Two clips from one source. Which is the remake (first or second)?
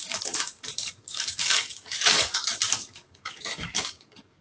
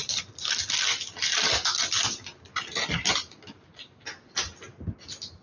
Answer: first